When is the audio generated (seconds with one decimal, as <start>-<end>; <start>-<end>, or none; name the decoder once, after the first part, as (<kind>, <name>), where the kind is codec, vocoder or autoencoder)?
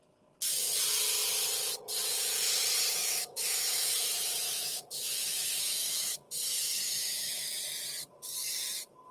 3.0-7.6 (autoencoder, DAC-VAE)